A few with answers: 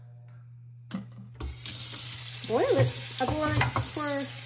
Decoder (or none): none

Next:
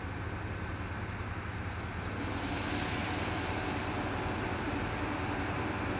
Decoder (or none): none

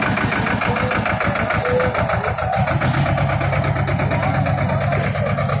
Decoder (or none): none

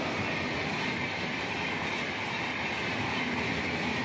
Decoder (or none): none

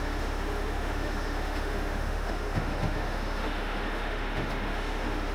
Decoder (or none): autoencoder, DAC-VAE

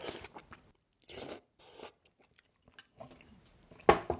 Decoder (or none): none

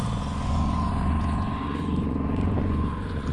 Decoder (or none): vocoder, Vocos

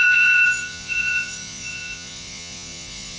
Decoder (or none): vocoder, Vocos